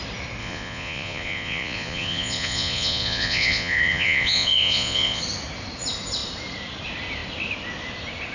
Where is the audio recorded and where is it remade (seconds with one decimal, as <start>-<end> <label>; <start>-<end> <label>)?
0.0-0.4 recorded; 0.4-5.2 remade; 5.2-8.3 recorded